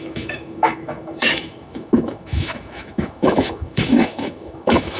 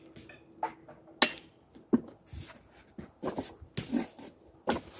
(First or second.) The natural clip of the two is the second